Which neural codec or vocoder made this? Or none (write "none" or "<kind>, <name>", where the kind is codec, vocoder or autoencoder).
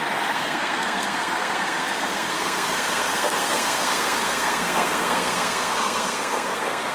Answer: codec, SNAC